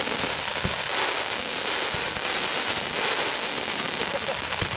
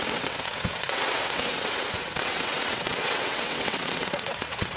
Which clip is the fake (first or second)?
second